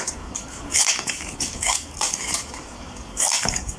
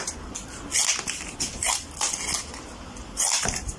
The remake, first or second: first